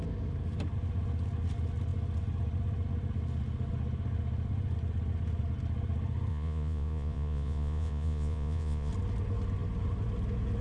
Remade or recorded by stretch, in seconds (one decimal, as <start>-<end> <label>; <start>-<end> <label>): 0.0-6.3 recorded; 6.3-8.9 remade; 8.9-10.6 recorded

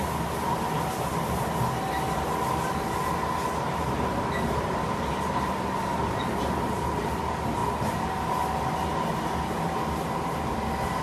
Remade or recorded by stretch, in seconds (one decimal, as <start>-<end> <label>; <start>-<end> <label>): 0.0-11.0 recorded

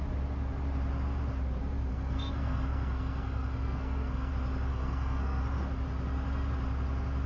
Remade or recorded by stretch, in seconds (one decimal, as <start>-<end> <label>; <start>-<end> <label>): 0.0-1.9 recorded; 1.9-4.3 remade; 4.3-4.7 recorded; 4.7-5.4 remade; 5.4-7.3 recorded